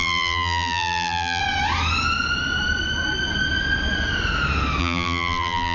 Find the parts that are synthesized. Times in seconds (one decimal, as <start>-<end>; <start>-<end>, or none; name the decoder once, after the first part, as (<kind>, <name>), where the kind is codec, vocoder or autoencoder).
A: 0.0-1.4 (vocoder, BigVGAN v2); 4.8-5.7